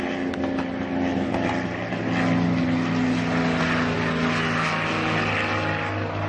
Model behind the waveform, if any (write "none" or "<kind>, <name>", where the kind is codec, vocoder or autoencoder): none